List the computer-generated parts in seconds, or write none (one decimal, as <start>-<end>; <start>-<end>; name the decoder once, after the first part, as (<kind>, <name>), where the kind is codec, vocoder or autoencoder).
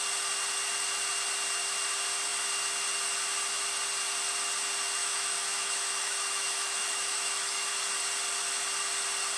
5.0-7.7 (autoencoder, DAC-VAE)